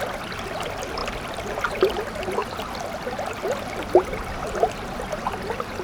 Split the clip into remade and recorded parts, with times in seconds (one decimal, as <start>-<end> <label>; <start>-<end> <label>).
0.0-5.8 recorded